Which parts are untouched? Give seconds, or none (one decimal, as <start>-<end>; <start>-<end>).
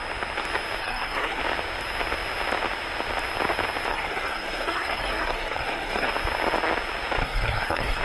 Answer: 0.0-0.8; 1.4-3.9; 6.1-7.2